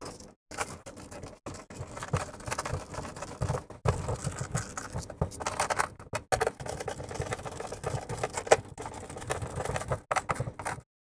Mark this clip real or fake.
real